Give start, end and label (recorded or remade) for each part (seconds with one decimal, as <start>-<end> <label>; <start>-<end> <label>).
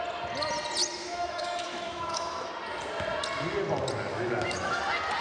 0.0-1.0 recorded; 1.0-2.5 remade; 2.5-4.1 recorded; 4.1-4.8 remade; 4.8-5.2 recorded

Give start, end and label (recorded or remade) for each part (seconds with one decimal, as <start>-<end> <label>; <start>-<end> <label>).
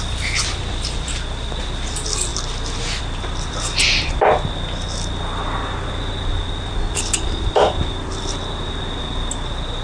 0.0-9.8 recorded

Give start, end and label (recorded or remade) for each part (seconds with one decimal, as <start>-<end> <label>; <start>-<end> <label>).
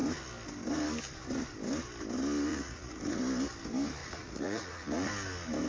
0.0-2.5 recorded; 2.5-3.2 remade; 3.2-4.0 recorded; 4.0-5.1 remade; 5.1-5.7 recorded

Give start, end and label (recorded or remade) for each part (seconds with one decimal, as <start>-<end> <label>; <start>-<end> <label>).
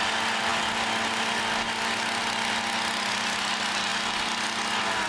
0.0-5.1 recorded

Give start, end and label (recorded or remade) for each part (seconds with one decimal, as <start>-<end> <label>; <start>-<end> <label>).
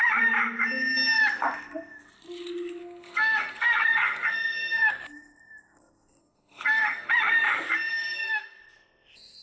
0.0-2.8 recorded; 2.8-4.9 remade; 4.9-6.2 recorded; 6.2-7.1 remade; 7.1-7.9 recorded; 7.9-8.6 remade; 8.6-9.4 recorded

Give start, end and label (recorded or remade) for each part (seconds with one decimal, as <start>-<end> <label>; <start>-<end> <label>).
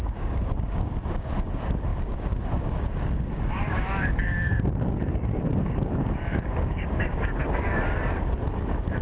0.0-9.0 remade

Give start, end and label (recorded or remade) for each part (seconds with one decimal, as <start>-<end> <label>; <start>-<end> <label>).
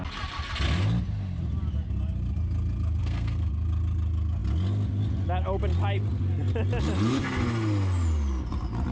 0.0-3.0 recorded; 3.0-3.5 remade; 3.5-8.9 recorded